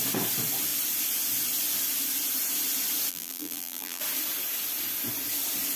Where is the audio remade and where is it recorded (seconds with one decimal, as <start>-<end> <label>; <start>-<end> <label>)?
0.0-3.1 recorded; 3.1-4.0 remade; 4.0-5.8 recorded